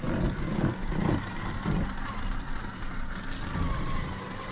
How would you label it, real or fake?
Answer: real